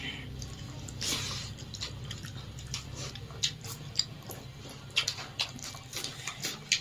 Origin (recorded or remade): recorded